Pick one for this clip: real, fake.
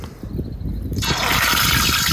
real